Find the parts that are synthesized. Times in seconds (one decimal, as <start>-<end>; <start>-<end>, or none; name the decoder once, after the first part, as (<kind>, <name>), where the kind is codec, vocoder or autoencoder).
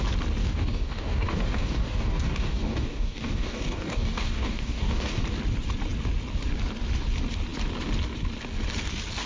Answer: 0.4-5.2 (codec, DAC)